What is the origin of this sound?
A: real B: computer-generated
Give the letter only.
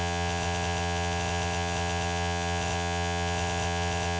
B